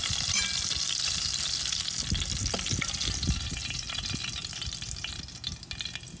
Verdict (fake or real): real